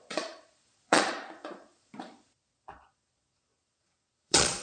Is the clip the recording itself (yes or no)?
no